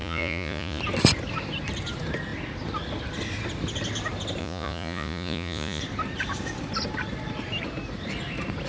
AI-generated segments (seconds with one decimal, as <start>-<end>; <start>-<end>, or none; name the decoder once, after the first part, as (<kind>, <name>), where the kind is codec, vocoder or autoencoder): 0.0-0.8 (vocoder, Vocos); 4.4-5.8